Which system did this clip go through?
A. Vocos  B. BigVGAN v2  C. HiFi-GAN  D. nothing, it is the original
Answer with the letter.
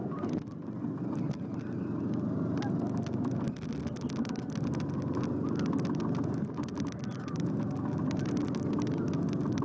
D